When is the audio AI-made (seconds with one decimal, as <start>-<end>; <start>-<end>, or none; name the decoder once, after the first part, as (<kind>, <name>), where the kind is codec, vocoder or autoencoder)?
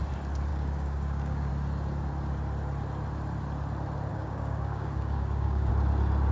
0.5-1.5 (codec, DAC); 4.1-5.7